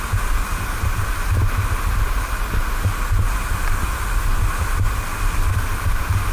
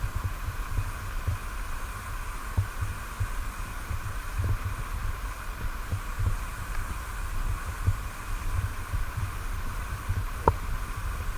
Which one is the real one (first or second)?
first